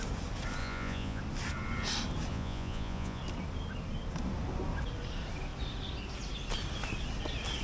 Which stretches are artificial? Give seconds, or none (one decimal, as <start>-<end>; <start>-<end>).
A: 0.6-1.2; 2.3-3.2